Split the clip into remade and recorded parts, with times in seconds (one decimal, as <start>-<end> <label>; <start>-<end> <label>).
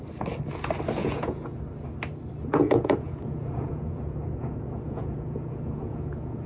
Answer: 0.0-1.0 recorded; 1.0-1.6 remade; 1.6-2.5 recorded; 2.5-6.5 remade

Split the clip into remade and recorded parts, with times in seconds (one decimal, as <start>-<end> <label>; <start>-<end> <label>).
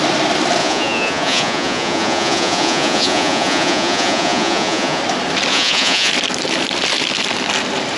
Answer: 0.0-0.6 recorded; 0.6-5.0 remade; 5.0-5.5 recorded; 5.5-6.1 remade; 6.1-8.0 recorded